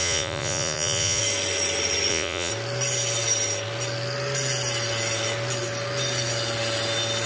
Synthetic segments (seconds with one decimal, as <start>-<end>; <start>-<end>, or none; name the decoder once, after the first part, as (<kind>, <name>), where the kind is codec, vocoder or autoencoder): 0.0-1.2 (vocoder, Vocos); 2.1-2.5